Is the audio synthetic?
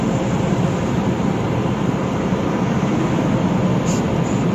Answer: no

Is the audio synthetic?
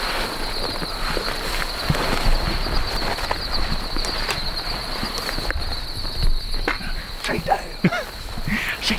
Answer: no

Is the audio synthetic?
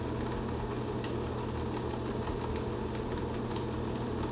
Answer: no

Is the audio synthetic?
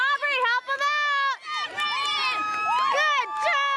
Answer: no